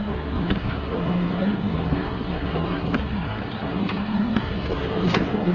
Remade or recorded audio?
remade